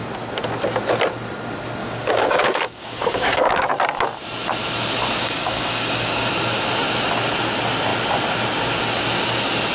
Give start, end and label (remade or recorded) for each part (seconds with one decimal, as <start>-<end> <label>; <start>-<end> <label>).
0.0-1.8 recorded; 1.8-3.7 remade; 3.7-5.2 recorded; 5.2-6.3 remade; 6.3-9.7 recorded